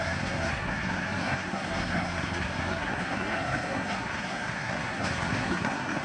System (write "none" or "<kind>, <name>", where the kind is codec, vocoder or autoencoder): codec, SNAC